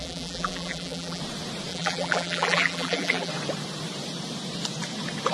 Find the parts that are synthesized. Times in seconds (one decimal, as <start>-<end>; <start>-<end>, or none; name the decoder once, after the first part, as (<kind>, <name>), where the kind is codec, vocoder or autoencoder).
0.0-1.2 (vocoder, BigVGAN v2); 1.7-3.3